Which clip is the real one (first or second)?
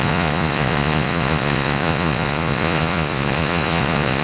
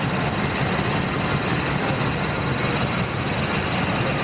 second